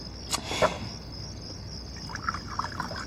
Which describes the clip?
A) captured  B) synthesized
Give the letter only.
A